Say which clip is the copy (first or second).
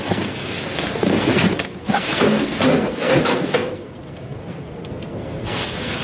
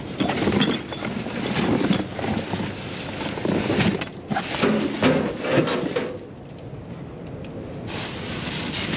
first